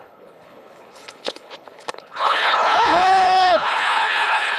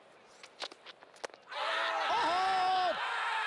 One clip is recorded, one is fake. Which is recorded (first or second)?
second